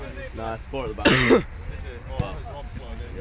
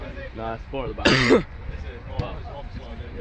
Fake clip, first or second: second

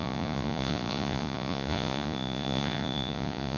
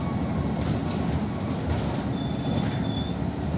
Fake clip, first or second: first